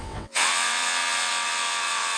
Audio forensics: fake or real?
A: fake